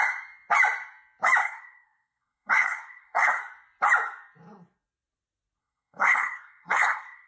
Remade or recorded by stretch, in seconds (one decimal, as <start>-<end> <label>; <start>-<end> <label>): 0.0-1.4 recorded; 1.4-3.4 remade; 3.4-5.6 recorded; 5.6-7.3 remade

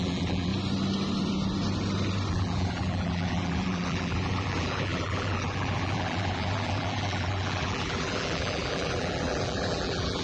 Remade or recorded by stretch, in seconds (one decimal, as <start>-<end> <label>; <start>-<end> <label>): 0.0-0.5 remade; 0.5-2.3 recorded; 2.3-10.2 remade

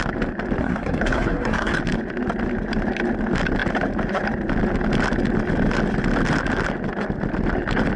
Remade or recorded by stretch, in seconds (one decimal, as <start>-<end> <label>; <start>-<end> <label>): 0.0-0.6 recorded; 0.6-1.8 remade; 1.8-8.0 recorded

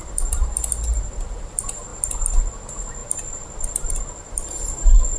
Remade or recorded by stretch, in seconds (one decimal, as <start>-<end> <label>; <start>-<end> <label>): 0.0-5.2 recorded

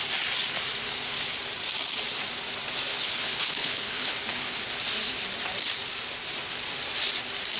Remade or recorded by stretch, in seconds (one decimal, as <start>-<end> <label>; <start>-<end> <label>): 0.0-2.9 recorded; 2.9-4.6 remade; 4.6-7.6 recorded